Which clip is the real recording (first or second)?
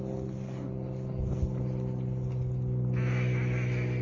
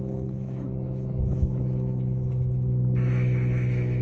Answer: first